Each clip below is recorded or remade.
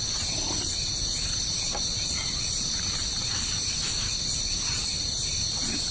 remade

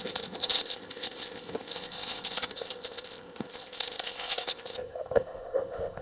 remade